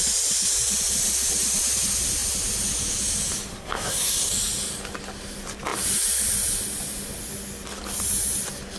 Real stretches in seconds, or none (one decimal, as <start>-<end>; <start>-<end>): 0.0-3.5; 4.3-8.8